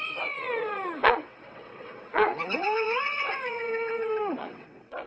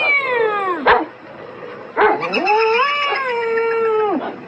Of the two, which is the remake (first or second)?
first